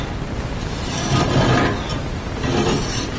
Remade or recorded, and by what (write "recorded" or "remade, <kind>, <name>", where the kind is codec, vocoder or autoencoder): recorded